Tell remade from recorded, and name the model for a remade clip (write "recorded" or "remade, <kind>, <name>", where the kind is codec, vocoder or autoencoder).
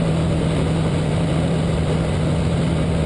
recorded